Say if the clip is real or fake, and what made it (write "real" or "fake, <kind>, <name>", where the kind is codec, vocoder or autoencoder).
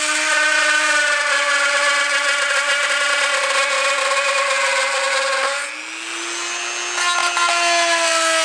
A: real